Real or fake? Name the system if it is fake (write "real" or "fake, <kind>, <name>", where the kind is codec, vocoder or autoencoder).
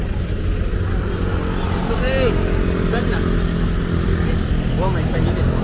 real